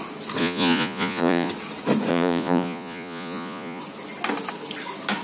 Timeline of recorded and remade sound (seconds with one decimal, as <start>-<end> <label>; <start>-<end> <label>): 0.0-0.4 recorded; 0.4-1.5 remade; 1.5-2.1 recorded; 2.1-3.8 remade; 3.8-5.2 recorded